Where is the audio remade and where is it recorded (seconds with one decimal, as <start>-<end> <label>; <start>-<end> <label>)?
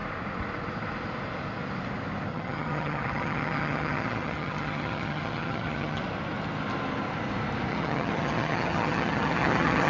0.0-2.3 recorded; 2.3-6.0 remade; 6.0-7.7 recorded; 7.7-9.9 remade